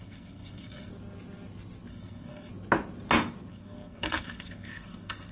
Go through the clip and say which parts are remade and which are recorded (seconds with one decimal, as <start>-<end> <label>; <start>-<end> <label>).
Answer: 0.0-0.9 remade; 0.9-1.9 recorded; 1.9-2.5 remade; 2.5-3.5 recorded; 3.5-5.3 remade